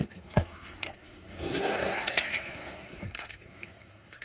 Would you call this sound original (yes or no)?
no